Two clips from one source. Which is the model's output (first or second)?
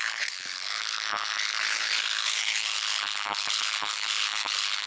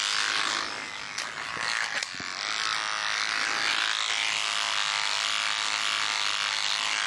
first